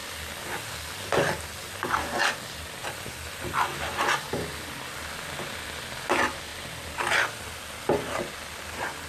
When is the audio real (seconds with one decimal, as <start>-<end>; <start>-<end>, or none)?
0.0-1.7; 6.5-9.1